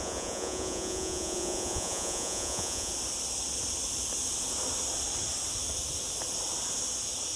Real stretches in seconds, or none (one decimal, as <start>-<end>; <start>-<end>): 2.9-7.4